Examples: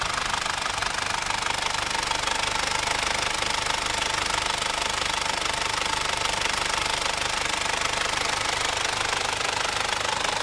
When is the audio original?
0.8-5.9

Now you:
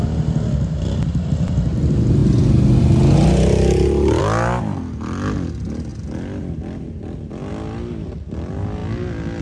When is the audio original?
0.0-9.4

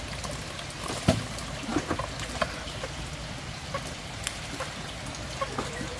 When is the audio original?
0.0-6.0